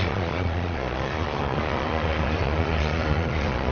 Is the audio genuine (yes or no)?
no